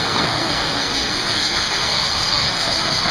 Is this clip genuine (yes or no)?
no